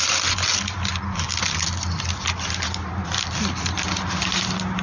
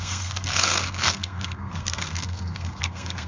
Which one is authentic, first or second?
first